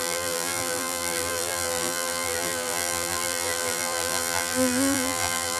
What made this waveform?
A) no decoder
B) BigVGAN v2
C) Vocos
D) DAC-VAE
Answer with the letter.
B